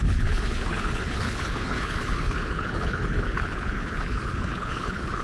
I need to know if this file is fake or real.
fake